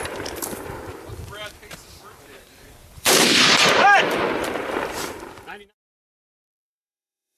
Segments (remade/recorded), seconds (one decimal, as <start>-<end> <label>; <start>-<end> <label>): 0.0-7.4 remade